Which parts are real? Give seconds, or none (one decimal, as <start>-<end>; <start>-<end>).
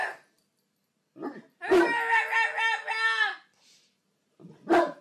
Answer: 0.0-5.0